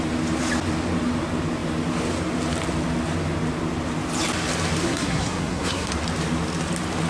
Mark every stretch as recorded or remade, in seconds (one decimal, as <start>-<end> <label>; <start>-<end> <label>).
0.0-4.8 recorded; 4.8-5.9 remade; 5.9-7.1 recorded